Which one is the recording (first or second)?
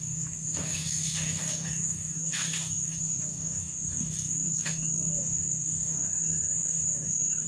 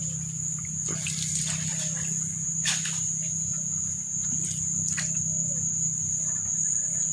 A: second